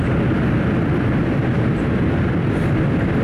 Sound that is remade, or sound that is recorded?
recorded